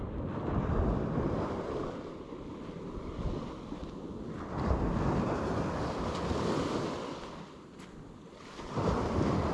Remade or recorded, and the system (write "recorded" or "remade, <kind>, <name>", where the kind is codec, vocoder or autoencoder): recorded